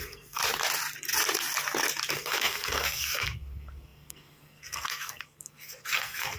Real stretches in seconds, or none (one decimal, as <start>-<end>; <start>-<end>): 0.4-2.1